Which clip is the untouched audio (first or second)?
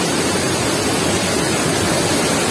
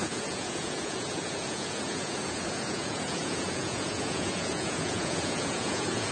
first